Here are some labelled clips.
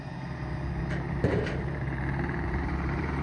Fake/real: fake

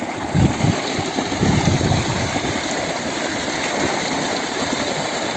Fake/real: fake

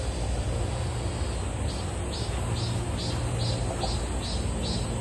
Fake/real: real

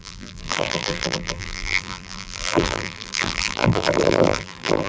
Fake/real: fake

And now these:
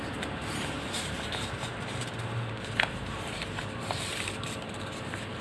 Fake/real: fake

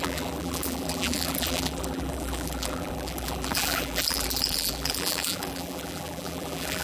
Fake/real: fake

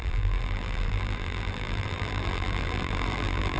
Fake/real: fake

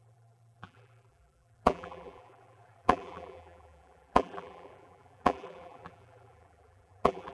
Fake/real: fake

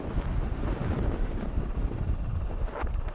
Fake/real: real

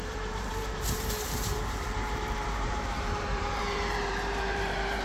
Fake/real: fake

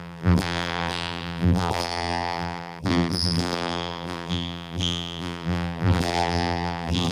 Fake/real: fake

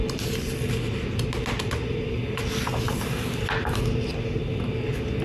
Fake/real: real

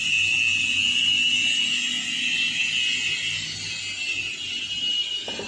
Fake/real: real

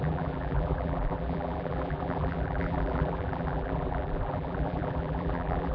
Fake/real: fake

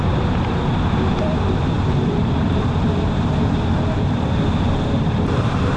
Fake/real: fake